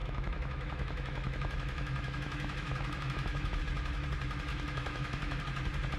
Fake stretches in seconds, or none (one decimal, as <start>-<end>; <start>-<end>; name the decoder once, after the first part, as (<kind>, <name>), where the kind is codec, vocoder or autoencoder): 0.0-3.6 (autoencoder, DAC-VAE); 4.5-5.4